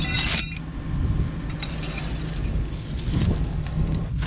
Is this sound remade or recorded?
recorded